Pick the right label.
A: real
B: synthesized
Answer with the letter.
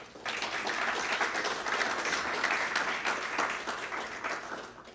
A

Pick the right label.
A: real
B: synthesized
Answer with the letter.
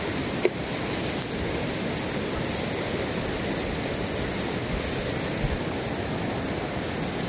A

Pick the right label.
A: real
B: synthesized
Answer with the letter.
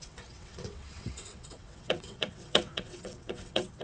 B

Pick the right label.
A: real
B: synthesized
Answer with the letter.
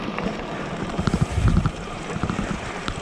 B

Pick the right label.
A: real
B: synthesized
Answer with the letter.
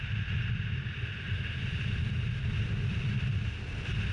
A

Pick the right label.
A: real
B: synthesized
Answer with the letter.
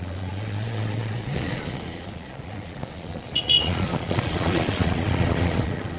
B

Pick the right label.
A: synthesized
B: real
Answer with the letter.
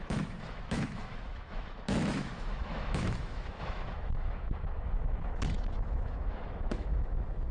A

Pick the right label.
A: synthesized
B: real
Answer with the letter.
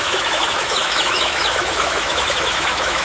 A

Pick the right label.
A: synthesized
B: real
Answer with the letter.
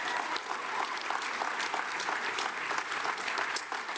B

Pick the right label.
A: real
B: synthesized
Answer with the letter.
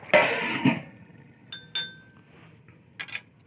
A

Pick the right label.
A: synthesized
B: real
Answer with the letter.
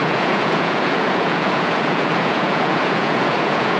A